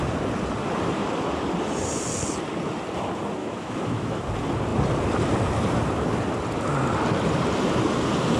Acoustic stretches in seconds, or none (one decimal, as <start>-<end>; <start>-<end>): 0.0-3.4; 4.2-8.4